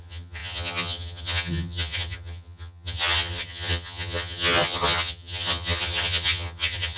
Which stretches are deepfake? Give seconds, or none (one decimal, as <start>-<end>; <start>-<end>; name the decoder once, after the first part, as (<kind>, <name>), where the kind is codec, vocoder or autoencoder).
0.0-7.0 (vocoder, HiFi-GAN)